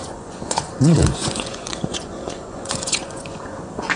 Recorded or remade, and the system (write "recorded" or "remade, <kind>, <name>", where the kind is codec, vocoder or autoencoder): remade, vocoder, Vocos